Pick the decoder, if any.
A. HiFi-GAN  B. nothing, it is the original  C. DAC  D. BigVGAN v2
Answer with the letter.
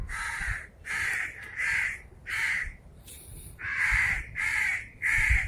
D